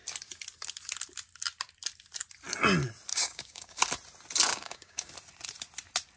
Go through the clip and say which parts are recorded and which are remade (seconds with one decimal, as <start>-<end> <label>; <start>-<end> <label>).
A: 0.0-3.1 recorded; 3.1-3.8 remade; 3.8-4.5 recorded; 4.5-5.1 remade; 5.1-6.2 recorded